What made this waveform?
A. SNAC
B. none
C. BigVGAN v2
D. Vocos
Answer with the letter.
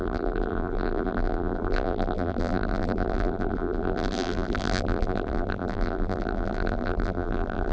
C